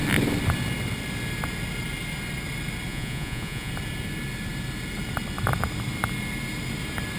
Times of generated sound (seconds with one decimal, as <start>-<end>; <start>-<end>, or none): 2.9-3.7